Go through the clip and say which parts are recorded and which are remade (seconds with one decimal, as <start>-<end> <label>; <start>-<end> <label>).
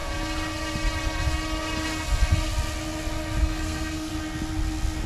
0.0-3.4 recorded; 3.4-4.1 remade; 4.1-5.1 recorded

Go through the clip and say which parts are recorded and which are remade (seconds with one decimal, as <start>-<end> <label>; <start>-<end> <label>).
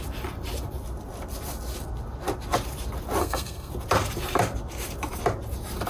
0.0-3.2 recorded; 3.2-3.7 remade; 3.7-5.9 recorded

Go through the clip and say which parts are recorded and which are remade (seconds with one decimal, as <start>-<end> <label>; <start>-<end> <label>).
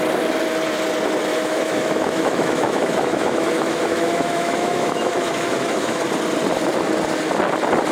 0.0-1.3 recorded; 1.3-6.0 remade; 6.0-7.9 recorded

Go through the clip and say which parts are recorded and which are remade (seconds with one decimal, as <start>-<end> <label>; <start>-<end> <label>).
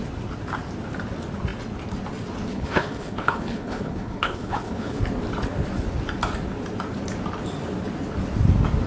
0.0-2.5 recorded; 2.5-5.0 remade; 5.0-8.9 recorded